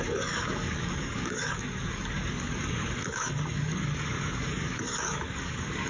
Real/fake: fake